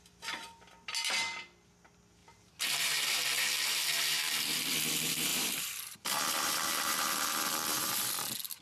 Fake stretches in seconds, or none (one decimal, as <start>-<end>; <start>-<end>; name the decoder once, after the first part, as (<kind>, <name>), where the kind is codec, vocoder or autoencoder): 2.2-4.3 (vocoder, BigVGAN v2); 5.3-7.8